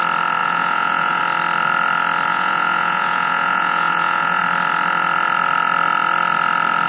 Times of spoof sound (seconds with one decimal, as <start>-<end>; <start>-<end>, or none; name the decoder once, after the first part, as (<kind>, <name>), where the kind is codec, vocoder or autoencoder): 0.4-1.2 (vocoder, Vocos); 2.3-4.4